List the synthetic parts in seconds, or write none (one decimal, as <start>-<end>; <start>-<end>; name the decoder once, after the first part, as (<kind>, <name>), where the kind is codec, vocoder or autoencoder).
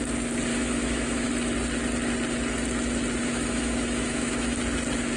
0.5-1.3 (autoencoder, DAC-VAE); 3.2-4.6